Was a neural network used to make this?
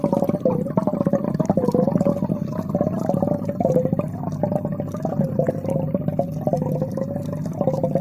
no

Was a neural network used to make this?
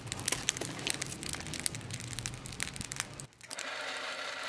no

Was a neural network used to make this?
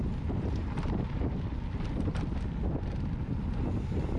yes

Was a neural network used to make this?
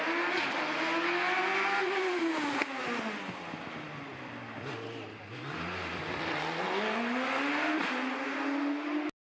no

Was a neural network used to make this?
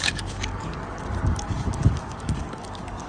yes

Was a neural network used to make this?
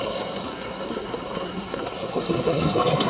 yes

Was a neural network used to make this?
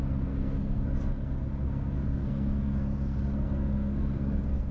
yes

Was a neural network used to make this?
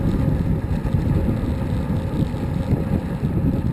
no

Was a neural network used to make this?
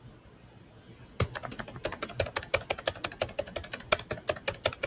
no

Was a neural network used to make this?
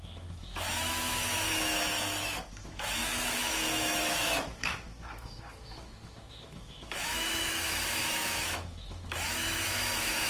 yes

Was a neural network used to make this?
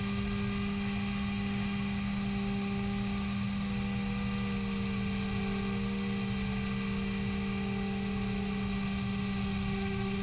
no